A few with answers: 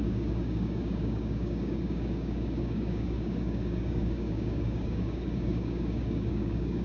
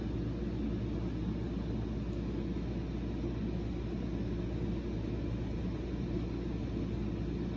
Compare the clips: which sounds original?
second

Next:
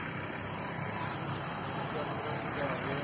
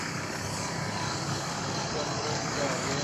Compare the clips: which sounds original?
first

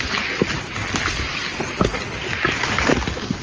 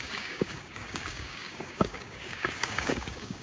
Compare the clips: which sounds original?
first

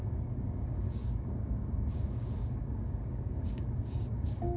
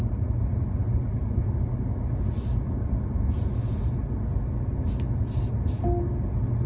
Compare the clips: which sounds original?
second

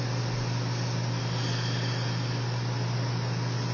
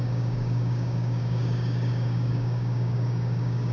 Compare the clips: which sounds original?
first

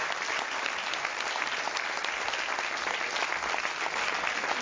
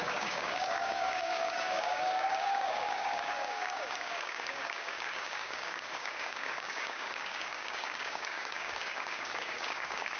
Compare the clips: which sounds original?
first